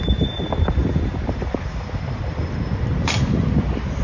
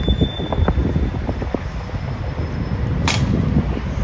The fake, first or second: first